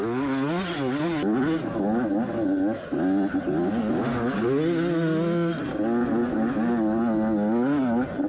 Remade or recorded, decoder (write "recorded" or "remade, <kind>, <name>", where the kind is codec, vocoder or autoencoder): recorded